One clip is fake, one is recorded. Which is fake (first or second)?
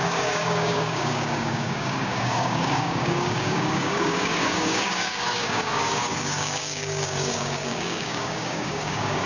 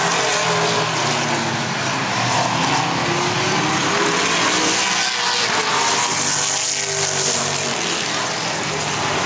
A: first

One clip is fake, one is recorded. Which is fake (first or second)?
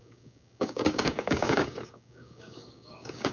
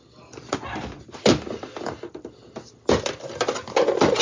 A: first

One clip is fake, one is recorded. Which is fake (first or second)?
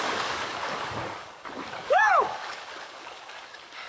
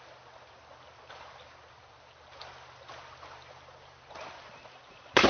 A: first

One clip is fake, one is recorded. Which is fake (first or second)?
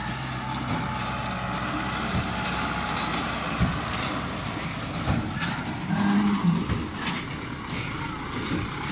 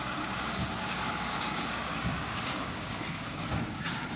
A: second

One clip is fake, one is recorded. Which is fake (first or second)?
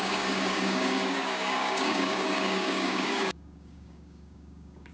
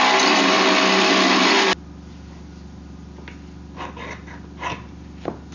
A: first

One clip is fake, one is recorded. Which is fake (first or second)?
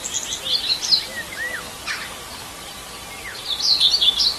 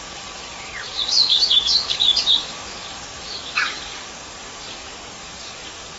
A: second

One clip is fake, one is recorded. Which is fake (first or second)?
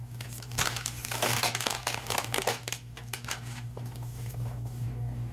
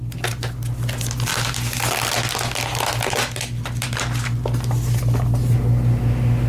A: first